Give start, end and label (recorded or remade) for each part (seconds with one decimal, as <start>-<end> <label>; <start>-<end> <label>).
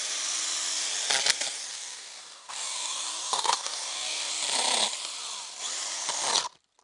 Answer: 0.0-1.7 recorded; 1.7-4.3 remade; 4.3-6.8 recorded